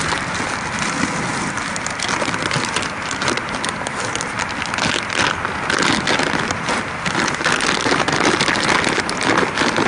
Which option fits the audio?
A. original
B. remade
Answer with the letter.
A